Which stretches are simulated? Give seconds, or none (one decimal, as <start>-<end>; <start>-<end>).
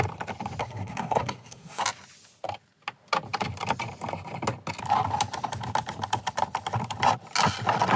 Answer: 0.6-1.8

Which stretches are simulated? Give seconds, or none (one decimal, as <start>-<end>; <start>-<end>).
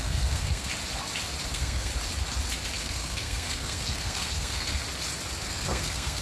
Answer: 0.0-0.7; 1.5-1.9; 2.8-4.8; 5.5-6.2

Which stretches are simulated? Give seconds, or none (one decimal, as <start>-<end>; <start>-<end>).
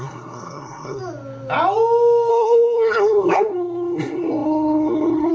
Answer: 0.0-1.0; 2.3-5.3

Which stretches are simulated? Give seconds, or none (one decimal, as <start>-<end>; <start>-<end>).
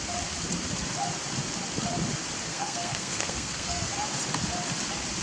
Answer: 2.5-3.9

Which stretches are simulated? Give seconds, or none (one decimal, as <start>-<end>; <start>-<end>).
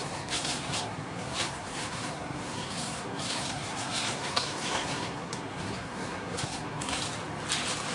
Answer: 0.0-7.0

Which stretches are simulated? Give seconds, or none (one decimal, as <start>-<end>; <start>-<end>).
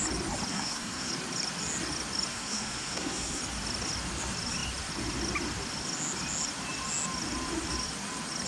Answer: 0.5-1.1; 2.3-3.4